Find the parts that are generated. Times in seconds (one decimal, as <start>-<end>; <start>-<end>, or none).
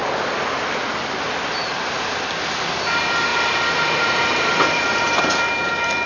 0.0-1.2; 3.3-5.2